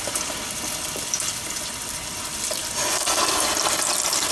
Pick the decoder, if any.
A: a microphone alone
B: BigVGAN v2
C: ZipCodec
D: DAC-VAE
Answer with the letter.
A